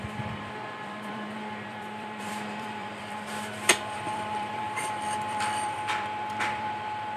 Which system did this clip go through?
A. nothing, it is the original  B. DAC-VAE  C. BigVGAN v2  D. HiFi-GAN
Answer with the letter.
C